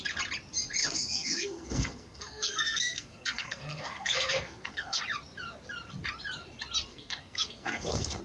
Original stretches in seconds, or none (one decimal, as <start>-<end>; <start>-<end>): 0.0-0.8; 5.0-6.9